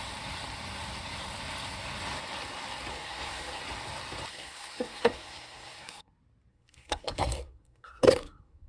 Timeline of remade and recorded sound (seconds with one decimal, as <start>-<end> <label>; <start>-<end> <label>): 0.0-2.9 recorded; 2.9-3.6 remade; 3.6-4.3 recorded; 4.3-6.1 remade; 6.1-6.5 recorded; 6.5-8.7 remade